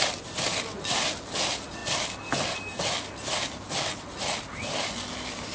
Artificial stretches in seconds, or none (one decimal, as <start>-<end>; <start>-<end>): none